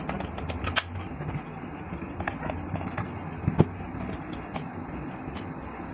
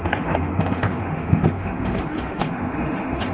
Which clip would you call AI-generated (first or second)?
second